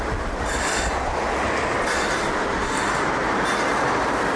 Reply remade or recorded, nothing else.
recorded